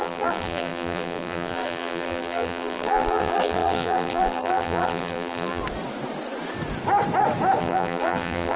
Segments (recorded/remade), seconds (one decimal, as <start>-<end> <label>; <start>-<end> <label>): 0.0-5.6 remade; 5.6-7.6 recorded; 7.6-8.6 remade